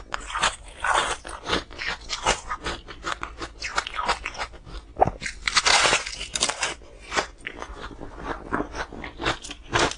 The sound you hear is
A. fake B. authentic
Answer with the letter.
B